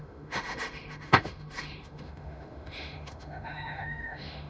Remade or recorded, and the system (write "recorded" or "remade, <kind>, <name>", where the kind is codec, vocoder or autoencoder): remade, autoencoder, DAC-VAE